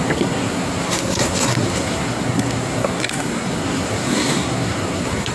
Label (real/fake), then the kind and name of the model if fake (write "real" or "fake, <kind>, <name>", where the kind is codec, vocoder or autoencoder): fake, codec, SNAC